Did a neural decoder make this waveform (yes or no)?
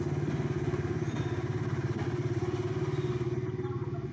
no